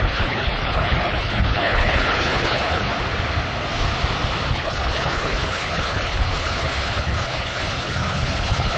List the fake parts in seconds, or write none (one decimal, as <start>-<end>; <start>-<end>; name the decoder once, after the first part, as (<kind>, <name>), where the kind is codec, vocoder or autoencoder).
0.0-2.9 (codec, HILCodec); 4.5-8.8